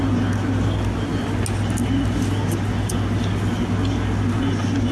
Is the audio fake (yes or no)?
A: no